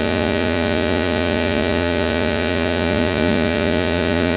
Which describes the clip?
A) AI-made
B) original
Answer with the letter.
A